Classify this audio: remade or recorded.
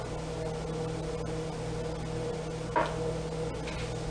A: recorded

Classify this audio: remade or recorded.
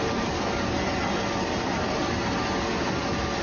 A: recorded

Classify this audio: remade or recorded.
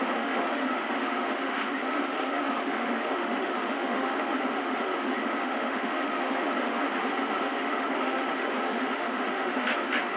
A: remade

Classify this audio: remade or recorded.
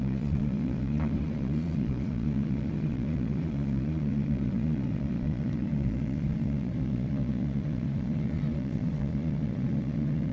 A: remade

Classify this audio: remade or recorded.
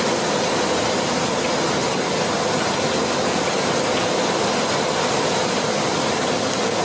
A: recorded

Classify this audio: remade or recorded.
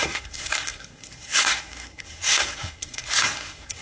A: remade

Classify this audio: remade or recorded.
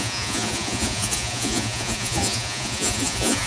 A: remade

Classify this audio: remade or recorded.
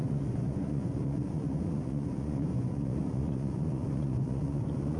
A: remade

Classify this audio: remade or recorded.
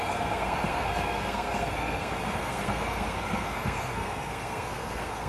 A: remade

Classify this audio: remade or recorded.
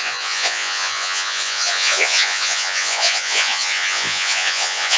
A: remade